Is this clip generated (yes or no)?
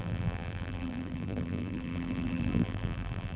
yes